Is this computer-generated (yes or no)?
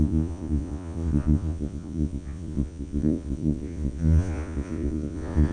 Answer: yes